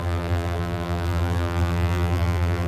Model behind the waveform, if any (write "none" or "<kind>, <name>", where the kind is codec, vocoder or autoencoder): vocoder, BigVGAN v2